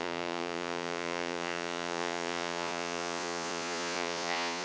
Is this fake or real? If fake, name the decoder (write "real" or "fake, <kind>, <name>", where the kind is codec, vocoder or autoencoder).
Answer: fake, vocoder, Vocos